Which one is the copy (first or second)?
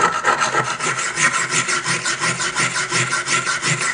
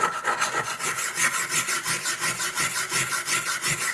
second